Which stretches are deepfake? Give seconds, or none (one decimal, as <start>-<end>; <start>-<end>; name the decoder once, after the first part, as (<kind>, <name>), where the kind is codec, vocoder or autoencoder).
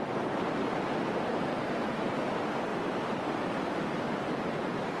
1.3-2.1 (vocoder, BigVGAN v2); 2.7-3.6